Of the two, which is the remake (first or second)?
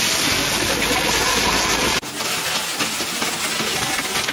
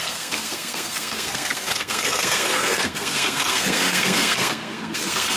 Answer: second